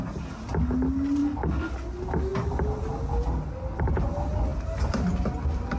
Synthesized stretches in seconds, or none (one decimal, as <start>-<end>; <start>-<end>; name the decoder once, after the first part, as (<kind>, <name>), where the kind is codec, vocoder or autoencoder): 1.2-1.8 (vocoder, BigVGAN v2); 4.5-5.1